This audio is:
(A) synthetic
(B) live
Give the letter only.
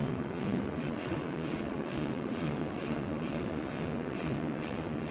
A